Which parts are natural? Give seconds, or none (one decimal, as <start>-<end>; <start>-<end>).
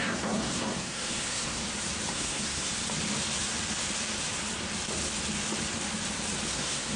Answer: 1.6-2.1; 2.7-6.5